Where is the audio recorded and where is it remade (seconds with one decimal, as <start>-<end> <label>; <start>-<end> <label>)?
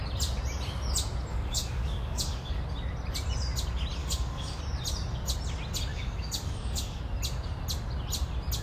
0.0-1.3 recorded; 1.3-2.6 remade; 2.6-4.0 recorded; 4.0-4.6 remade; 4.6-5.9 recorded; 5.9-7.0 remade; 7.0-8.6 recorded